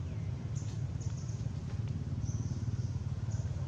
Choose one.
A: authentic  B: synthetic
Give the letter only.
A